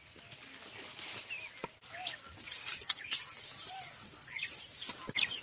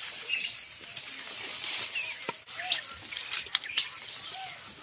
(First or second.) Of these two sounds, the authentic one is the first